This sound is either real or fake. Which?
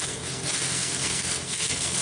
fake